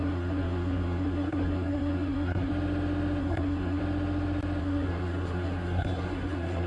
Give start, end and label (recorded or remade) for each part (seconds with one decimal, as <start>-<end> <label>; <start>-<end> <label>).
0.0-2.5 remade; 2.5-3.2 recorded; 3.2-3.8 remade; 3.8-4.6 recorded; 4.6-6.7 remade